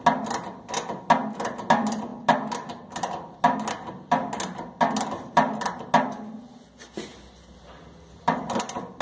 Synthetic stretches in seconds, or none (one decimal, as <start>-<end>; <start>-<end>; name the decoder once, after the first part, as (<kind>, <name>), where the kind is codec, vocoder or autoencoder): none